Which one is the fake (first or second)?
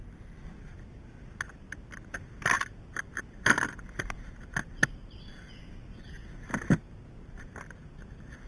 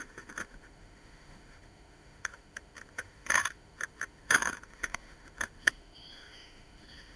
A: second